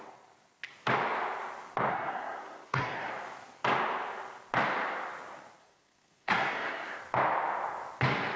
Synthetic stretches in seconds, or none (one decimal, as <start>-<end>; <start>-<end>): 1.9-3.1; 5.6-7.0